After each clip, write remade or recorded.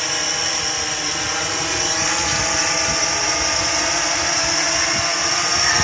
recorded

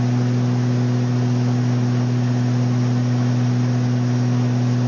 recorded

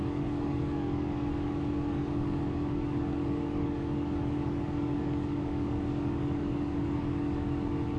remade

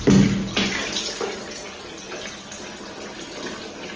recorded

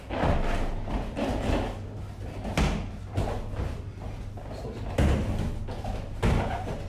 recorded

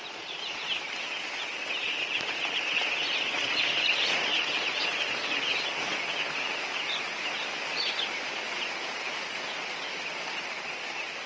recorded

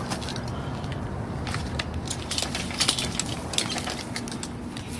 recorded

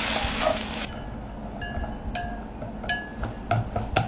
recorded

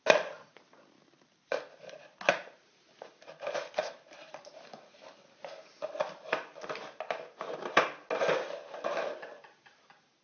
recorded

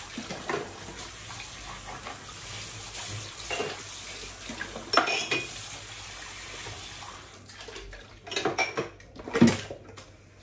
recorded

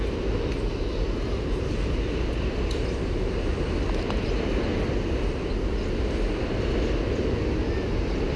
recorded